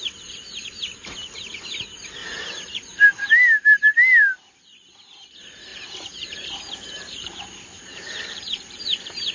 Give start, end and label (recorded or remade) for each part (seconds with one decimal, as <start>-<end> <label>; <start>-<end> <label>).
0.0-5.7 recorded; 5.7-9.3 remade